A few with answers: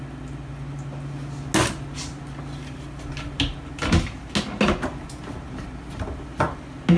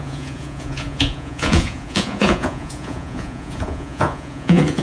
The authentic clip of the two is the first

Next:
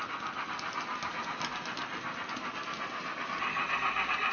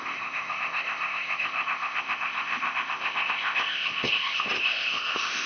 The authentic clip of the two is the first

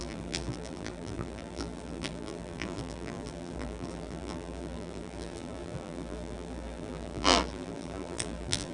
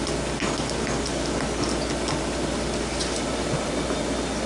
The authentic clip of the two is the second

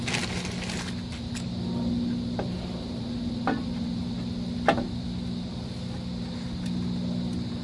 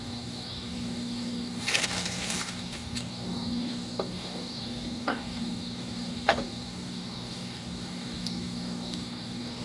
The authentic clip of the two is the first